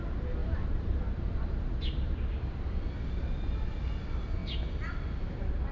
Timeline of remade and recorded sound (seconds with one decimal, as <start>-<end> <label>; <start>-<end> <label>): 0.0-0.4 recorded; 0.4-2.2 remade; 2.2-5.7 recorded